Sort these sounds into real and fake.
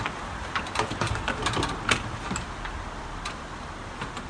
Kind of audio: fake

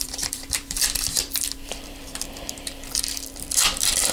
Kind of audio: fake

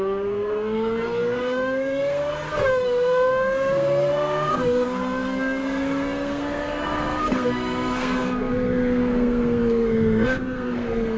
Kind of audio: fake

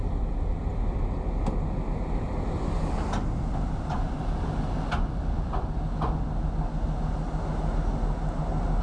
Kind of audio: real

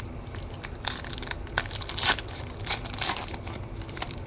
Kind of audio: real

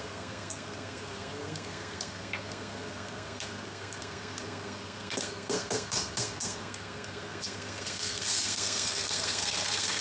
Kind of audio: fake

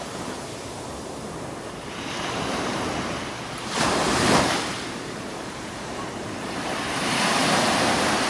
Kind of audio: fake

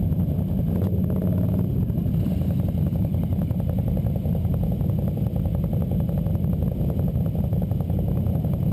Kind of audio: real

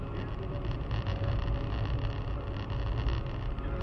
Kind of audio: real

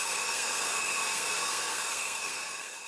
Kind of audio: fake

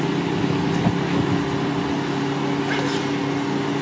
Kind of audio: real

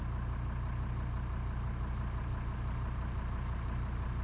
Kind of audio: real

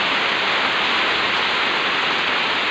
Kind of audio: real